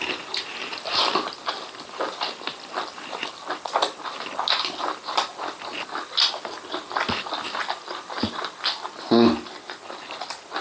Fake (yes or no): no